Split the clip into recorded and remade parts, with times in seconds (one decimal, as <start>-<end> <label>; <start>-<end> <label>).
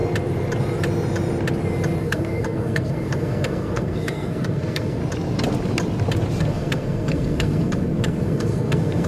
0.0-2.0 recorded; 2.0-5.0 remade; 5.0-6.4 recorded; 6.4-9.1 remade